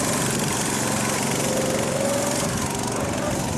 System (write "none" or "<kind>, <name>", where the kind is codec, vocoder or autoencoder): none